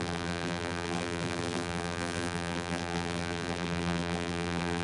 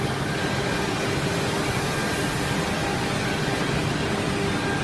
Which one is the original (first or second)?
second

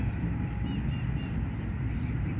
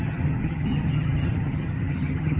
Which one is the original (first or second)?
first